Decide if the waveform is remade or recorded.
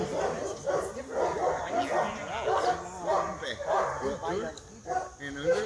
recorded